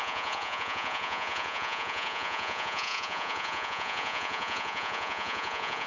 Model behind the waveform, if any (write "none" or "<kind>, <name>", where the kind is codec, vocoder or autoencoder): vocoder, Vocos